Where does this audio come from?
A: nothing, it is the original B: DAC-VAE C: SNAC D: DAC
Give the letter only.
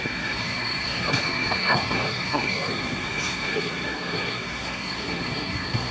C